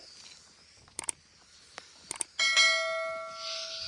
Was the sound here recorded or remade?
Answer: recorded